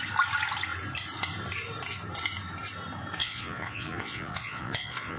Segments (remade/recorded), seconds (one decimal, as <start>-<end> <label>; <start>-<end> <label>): 0.0-3.2 recorded; 3.2-5.2 remade